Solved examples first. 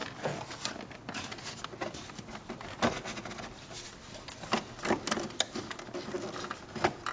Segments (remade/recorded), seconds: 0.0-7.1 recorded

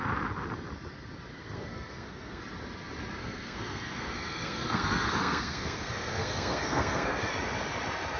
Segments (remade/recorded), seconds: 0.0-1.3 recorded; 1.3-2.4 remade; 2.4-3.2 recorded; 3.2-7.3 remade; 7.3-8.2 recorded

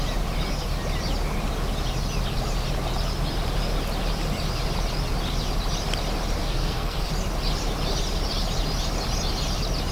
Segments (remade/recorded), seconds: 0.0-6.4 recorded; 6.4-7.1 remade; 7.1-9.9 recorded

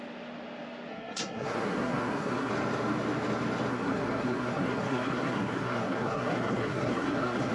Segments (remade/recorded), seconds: 0.0-0.9 recorded; 0.9-2.5 remade; 2.5-3.7 recorded; 3.7-7.5 remade